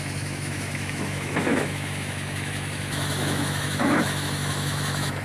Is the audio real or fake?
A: fake